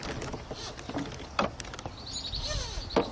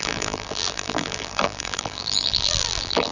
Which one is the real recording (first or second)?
first